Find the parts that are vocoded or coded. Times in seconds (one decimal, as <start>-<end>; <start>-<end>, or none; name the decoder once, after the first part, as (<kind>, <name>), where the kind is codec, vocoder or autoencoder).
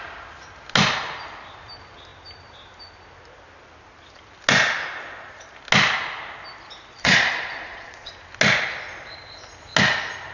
6.9-8.1 (vocoder, Vocos)